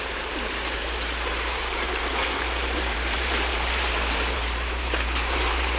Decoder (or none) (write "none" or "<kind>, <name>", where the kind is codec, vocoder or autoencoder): vocoder, BigVGAN v2